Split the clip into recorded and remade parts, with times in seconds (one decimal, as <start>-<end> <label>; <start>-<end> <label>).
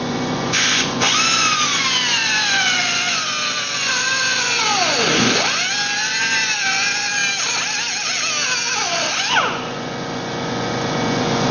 0.0-7.2 remade; 7.2-8.7 recorded; 8.7-11.5 remade